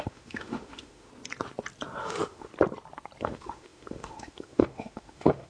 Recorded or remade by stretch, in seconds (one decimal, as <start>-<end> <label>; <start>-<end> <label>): 0.0-1.1 remade; 1.1-2.0 recorded; 2.0-2.5 remade; 2.5-3.2 recorded; 3.2-5.5 remade